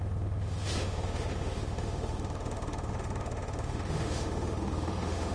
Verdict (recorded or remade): remade